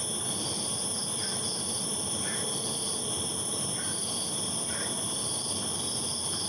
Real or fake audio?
real